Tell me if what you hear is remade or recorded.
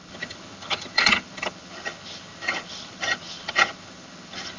remade